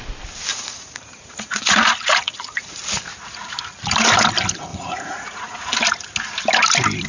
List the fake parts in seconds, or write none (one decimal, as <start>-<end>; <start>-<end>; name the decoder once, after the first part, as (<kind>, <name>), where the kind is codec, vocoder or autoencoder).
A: 0.5-2.8 (vocoder, Vocos); 4.7-5.8